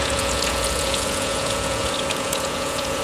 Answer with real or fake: fake